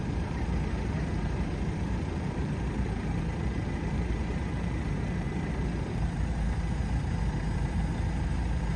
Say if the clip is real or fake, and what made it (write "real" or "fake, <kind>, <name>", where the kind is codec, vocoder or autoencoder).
fake, vocoder, BigVGAN v2